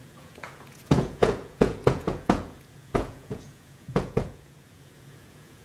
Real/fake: fake